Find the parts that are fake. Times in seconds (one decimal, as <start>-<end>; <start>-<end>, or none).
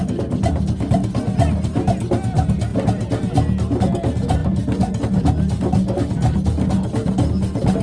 none